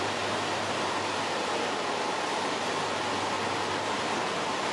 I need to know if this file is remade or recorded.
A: recorded